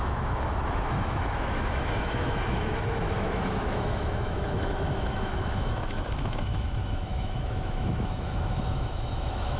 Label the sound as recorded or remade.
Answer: remade